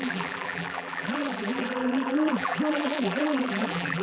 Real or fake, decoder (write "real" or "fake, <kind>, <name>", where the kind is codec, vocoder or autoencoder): fake, vocoder, BigVGAN v2